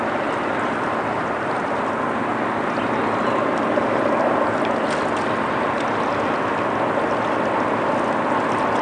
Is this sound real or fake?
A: real